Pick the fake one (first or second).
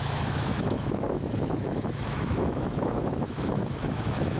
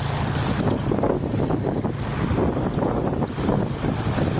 first